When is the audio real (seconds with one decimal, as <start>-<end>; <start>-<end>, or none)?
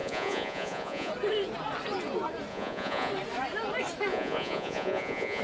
1.1-2.5; 3.1-4.1